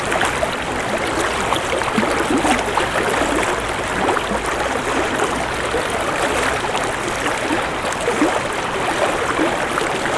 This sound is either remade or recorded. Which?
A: recorded